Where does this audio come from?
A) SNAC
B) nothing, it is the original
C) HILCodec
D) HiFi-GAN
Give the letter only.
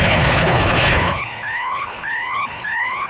C